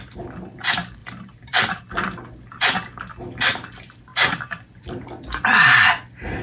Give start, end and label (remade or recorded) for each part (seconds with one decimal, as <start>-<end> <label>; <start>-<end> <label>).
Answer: 0.0-1.0 recorded; 1.0-1.8 remade; 1.8-6.4 recorded